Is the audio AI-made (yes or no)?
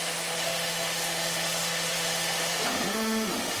yes